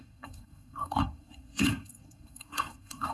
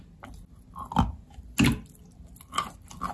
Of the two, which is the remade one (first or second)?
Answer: first